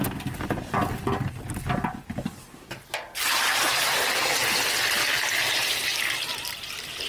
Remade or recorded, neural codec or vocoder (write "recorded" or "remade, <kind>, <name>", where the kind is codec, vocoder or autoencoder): recorded